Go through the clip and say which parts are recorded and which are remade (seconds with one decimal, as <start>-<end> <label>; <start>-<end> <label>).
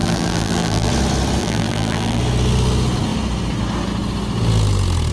0.0-0.9 remade; 0.9-1.4 recorded; 1.4-2.2 remade; 2.2-5.1 recorded